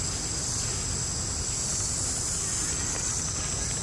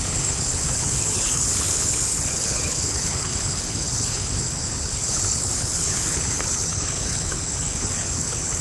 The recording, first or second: first